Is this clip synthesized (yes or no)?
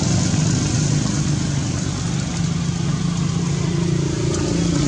no